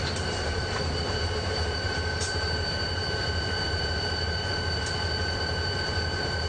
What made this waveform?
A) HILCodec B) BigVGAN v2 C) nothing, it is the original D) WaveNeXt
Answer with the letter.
B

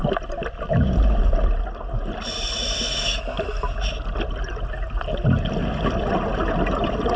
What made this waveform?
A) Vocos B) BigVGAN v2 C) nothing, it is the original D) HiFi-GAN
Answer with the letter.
C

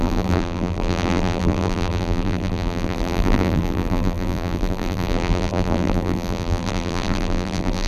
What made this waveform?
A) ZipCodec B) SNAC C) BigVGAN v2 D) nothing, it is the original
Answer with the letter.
C